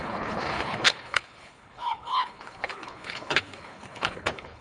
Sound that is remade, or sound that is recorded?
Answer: remade